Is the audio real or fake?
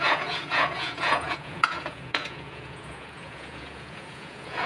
fake